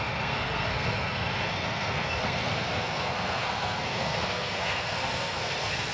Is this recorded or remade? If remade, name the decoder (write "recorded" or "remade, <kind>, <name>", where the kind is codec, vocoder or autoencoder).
remade, codec, SNAC